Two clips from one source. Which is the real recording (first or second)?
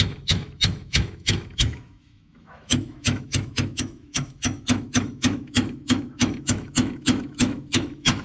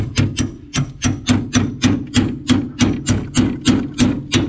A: second